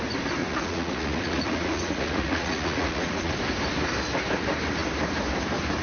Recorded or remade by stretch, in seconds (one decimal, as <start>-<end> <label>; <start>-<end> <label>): 0.0-0.4 recorded; 0.4-3.3 remade; 3.3-5.8 recorded